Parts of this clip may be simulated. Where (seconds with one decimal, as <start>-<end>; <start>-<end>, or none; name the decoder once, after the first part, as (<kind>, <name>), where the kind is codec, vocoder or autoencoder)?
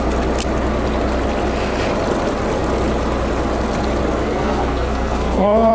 4.2-5.7 (codec, SNAC)